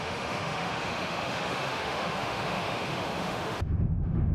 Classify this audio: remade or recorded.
remade